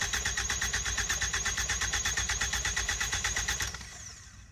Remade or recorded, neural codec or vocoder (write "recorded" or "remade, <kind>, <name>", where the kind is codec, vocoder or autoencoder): remade, vocoder, BigVGAN v2